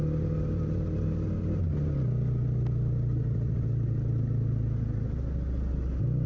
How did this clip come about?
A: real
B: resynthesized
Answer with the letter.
A